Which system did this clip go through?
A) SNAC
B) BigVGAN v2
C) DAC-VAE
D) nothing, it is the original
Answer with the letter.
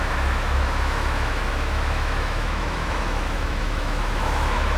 C